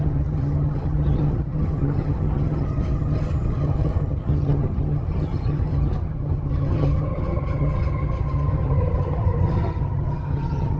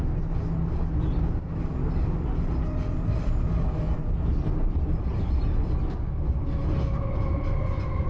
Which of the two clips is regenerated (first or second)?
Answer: first